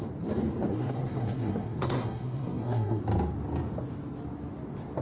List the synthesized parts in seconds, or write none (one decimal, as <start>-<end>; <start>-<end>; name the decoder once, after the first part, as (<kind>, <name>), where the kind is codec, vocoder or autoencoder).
0.7-3.0 (codec, SNAC)